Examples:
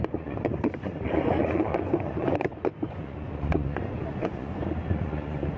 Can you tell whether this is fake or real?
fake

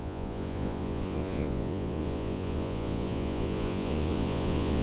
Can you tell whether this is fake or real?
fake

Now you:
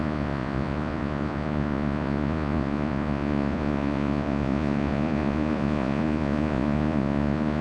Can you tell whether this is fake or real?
fake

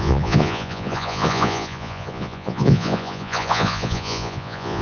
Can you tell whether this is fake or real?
fake